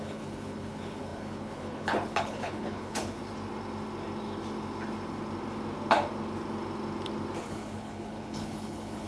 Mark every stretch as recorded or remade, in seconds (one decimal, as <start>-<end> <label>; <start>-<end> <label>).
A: 0.0-3.2 remade; 3.2-7.4 recorded; 7.4-9.1 remade